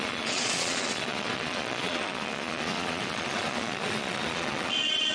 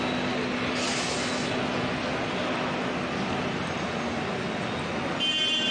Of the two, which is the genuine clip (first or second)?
second